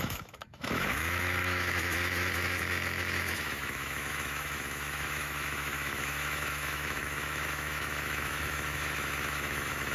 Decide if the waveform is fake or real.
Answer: fake